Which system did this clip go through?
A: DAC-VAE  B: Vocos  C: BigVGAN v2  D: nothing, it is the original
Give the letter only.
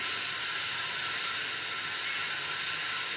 D